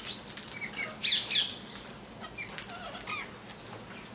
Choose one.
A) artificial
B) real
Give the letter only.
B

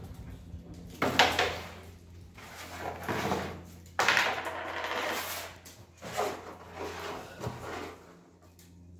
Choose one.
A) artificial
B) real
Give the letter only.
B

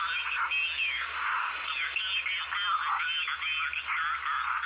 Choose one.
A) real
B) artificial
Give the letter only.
A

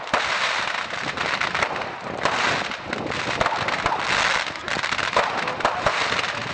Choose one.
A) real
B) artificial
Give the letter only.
A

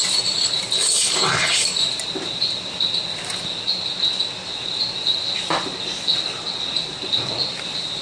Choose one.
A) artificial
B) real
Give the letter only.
B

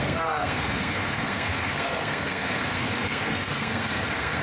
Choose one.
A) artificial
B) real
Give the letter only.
A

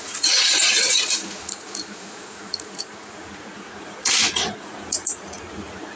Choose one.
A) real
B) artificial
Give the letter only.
B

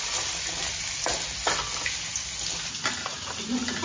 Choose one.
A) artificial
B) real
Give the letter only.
B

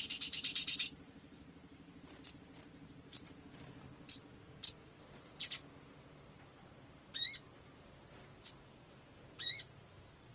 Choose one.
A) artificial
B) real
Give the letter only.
A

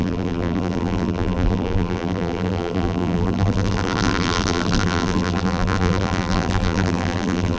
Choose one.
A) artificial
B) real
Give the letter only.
A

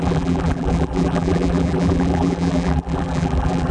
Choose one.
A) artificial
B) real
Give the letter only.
A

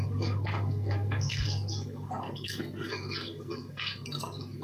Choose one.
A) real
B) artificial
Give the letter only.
B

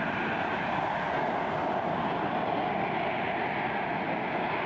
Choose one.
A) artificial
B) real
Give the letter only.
B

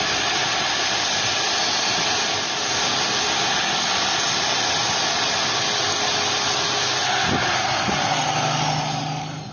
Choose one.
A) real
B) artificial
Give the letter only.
A